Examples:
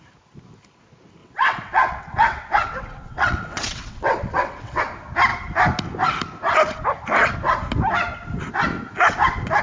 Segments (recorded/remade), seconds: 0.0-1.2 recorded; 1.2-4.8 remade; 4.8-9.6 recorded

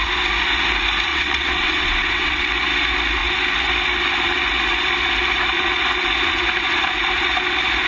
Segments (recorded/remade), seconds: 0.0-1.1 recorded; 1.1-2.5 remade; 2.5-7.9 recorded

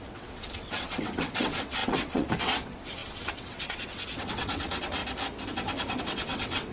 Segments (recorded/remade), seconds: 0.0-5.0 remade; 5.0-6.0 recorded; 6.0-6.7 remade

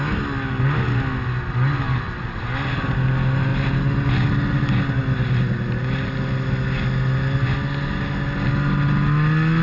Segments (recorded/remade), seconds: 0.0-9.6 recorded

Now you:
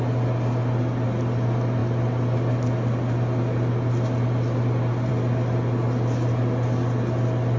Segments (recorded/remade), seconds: 0.0-7.6 recorded

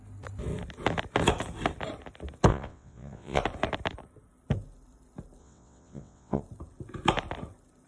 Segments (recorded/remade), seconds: 0.0-2.5 recorded; 2.5-3.4 remade; 3.4-5.4 recorded; 5.4-6.4 remade; 6.4-7.9 recorded